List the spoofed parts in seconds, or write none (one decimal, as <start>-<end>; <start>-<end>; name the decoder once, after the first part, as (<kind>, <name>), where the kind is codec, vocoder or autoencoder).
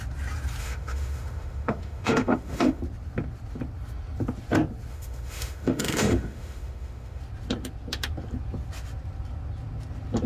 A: 0.6-2.8 (autoencoder, DAC-VAE); 4.9-7.2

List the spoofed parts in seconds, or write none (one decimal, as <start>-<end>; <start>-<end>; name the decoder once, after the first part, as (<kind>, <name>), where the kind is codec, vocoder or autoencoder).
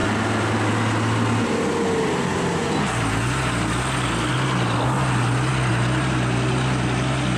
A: none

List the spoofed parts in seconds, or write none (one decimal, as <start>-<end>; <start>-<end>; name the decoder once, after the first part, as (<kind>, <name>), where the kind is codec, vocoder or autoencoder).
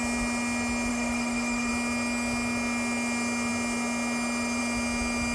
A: 0.9-1.7 (autoencoder, DAC-VAE)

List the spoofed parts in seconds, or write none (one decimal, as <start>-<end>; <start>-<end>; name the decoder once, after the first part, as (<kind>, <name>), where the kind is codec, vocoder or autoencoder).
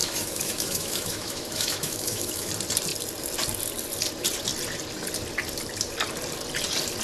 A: 0.0-2.5 (autoencoder, DAC-VAE)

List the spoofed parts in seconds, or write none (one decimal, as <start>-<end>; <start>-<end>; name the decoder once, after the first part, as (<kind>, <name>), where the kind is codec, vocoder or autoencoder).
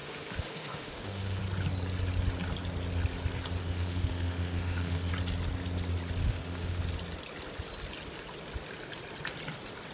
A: 0.0-1.4 (autoencoder, DAC-VAE); 3.6-5.1; 6.2-6.8